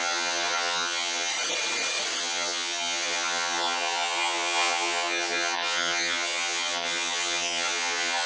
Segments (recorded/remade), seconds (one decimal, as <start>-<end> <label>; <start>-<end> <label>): 0.0-1.3 remade; 1.3-2.2 recorded; 2.2-8.3 remade